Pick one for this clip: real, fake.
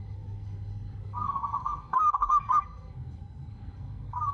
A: fake